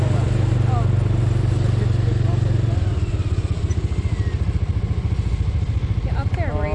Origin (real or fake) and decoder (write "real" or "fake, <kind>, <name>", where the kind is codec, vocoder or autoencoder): real